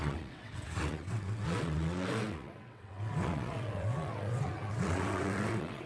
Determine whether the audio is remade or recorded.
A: remade